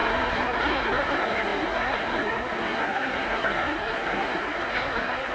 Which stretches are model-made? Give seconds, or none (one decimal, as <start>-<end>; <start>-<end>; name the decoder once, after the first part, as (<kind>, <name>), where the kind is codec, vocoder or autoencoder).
0.0-5.3 (codec, SNAC)